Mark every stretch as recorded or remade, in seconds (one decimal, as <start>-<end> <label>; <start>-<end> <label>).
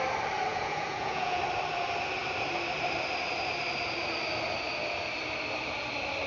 0.0-0.5 recorded; 0.5-1.4 remade; 1.4-6.3 recorded